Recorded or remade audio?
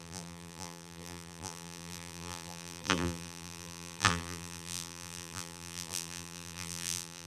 remade